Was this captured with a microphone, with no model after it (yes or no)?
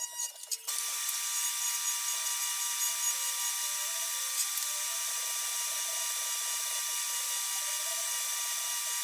yes